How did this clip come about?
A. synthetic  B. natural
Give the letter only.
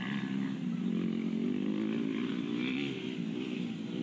B